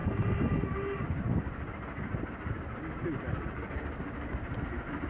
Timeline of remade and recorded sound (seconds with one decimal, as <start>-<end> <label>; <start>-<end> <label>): 0.0-5.1 recorded